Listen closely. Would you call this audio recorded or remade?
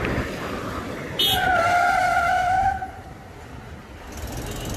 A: recorded